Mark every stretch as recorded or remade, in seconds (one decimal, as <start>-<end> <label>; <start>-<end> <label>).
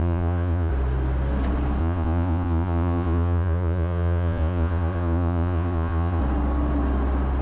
0.0-0.7 remade; 0.7-1.8 recorded; 1.8-6.2 remade; 6.2-7.4 recorded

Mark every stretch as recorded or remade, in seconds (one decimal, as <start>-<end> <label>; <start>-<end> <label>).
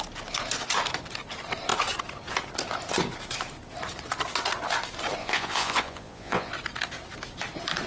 0.0-5.2 recorded; 5.2-6.5 remade; 6.5-7.9 recorded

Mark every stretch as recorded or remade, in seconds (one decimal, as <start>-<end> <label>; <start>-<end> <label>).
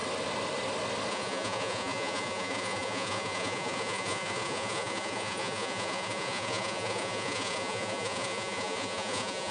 0.0-1.1 recorded; 1.1-9.5 remade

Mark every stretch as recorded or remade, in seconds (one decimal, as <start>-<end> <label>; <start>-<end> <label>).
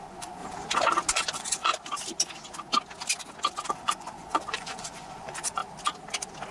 0.0-0.4 remade; 0.4-1.1 recorded; 1.1-1.7 remade; 1.7-3.7 recorded; 3.7-5.6 remade; 5.6-6.5 recorded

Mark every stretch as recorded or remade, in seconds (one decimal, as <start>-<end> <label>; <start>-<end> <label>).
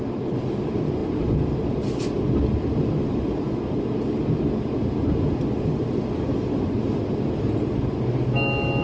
0.0-8.8 recorded